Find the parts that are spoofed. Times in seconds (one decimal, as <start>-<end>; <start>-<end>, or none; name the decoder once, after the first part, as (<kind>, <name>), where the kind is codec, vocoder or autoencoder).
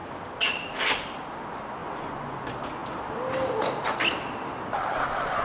1.8-2.4 (vocoder, Vocos)